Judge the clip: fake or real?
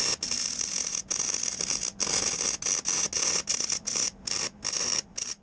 real